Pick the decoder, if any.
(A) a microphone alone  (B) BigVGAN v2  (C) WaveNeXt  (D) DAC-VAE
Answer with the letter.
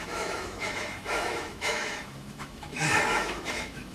D